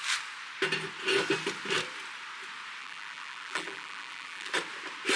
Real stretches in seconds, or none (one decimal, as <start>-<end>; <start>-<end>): 0.0-2.8; 4.5-5.2